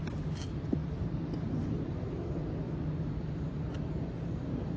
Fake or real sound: real